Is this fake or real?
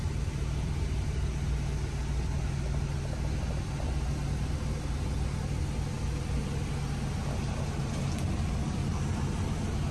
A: real